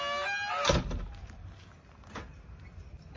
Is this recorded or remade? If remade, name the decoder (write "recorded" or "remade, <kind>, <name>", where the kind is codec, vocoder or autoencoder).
recorded